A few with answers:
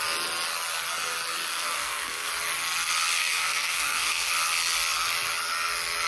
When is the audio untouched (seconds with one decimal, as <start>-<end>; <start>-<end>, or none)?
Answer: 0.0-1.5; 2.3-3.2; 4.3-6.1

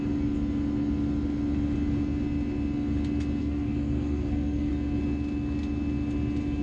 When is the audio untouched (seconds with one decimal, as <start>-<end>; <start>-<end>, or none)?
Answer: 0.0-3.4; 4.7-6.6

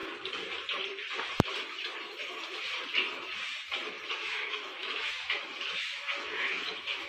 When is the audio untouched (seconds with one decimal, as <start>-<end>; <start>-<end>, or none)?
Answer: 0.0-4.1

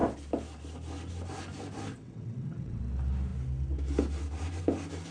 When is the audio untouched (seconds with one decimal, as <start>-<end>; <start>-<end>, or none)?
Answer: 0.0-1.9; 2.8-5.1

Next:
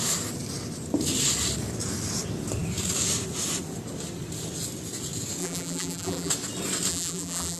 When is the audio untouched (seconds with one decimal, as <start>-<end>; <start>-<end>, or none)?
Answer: 0.0-5.4; 6.3-6.9

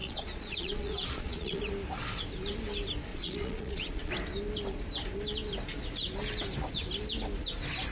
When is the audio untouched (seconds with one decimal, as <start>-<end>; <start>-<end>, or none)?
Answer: 1.7-3.1; 4.1-7.9

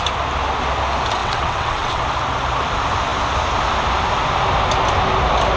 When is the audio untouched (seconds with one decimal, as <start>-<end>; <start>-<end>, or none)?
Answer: 0.0-1.2; 2.0-5.6